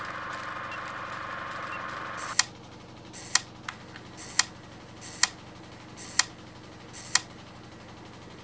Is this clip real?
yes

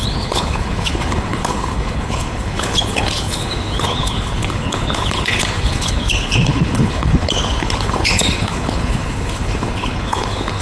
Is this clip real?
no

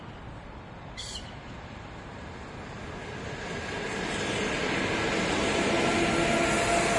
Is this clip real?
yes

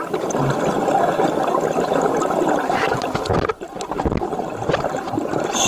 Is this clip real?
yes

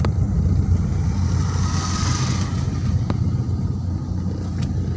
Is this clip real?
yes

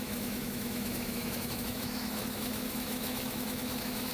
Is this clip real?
no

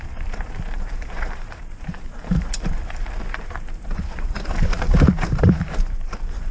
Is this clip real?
no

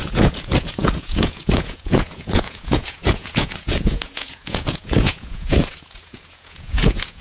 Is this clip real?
no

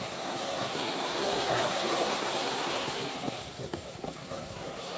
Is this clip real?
no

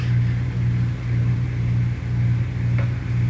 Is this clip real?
yes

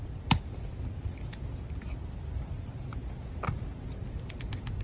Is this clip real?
yes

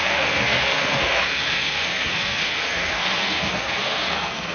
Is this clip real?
no